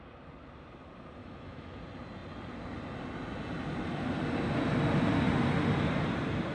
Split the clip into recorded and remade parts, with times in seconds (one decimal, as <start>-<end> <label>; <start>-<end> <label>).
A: 0.0-1.2 recorded; 1.2-1.8 remade; 1.8-6.5 recorded